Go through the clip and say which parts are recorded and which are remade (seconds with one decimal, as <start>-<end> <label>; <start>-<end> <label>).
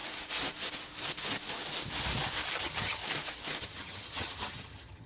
0.0-2.6 recorded; 2.6-3.0 remade; 3.0-3.6 recorded; 3.6-5.1 remade